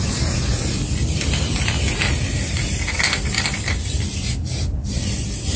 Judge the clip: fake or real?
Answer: fake